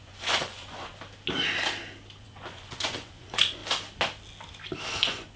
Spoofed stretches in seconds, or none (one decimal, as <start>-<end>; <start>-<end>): 0.0-0.9; 2.2-3.6; 4.9-5.4